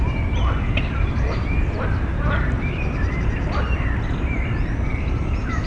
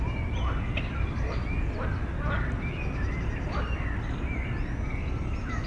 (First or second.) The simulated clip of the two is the first